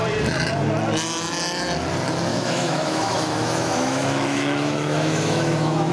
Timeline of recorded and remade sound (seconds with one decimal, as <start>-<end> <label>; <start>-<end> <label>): 0.0-2.3 recorded; 2.3-5.9 remade